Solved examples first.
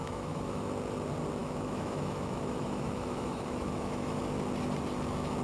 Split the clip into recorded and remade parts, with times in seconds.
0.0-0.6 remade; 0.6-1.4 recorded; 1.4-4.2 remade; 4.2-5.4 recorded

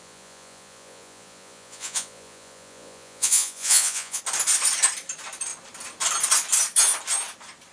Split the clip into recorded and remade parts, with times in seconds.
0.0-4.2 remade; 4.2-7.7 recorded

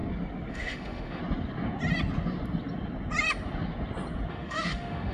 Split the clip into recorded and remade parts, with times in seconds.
0.0-0.5 recorded; 0.5-1.2 remade; 1.2-4.3 recorded; 4.3-5.1 remade